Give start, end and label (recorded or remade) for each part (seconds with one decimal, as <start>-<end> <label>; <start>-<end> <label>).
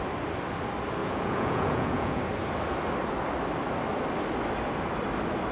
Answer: 0.0-1.0 recorded; 1.0-2.2 remade; 2.2-5.5 recorded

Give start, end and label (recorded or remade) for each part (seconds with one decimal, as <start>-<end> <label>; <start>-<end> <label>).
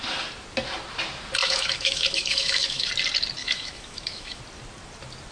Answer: 0.0-1.4 recorded; 1.4-2.9 remade; 2.9-3.4 recorded; 3.4-4.4 remade; 4.4-5.3 recorded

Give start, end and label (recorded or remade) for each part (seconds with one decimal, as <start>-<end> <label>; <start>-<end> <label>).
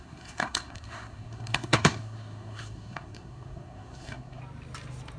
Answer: 0.0-4.4 remade; 4.4-5.2 recorded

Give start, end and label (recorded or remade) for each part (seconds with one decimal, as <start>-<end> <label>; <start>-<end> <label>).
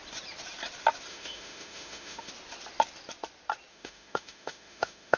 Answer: 0.0-1.1 recorded; 1.1-2.3 remade; 2.3-3.7 recorded; 3.7-5.2 remade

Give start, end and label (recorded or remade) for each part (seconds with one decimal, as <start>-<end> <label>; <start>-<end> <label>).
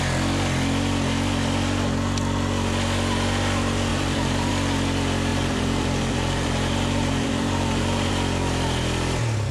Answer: 0.0-3.9 recorded; 3.9-4.5 remade; 4.5-5.3 recorded; 5.3-8.1 remade; 8.1-9.5 recorded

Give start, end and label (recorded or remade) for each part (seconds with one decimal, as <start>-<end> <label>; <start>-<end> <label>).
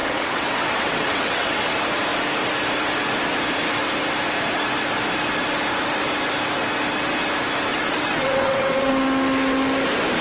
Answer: 0.0-1.7 remade; 1.7-7.7 recorded; 7.7-8.9 remade; 8.9-10.2 recorded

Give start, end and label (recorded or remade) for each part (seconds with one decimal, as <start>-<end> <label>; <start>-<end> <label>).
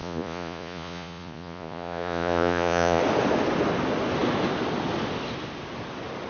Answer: 0.0-3.0 remade; 3.0-6.3 recorded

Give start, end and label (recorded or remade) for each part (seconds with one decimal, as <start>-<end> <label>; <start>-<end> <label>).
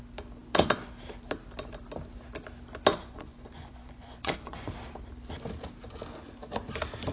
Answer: 0.0-2.9 recorded; 2.9-4.7 remade; 4.7-7.1 recorded